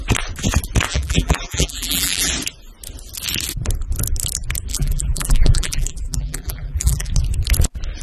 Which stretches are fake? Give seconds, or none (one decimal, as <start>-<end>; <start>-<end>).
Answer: 0.9-2.3; 4.7-7.1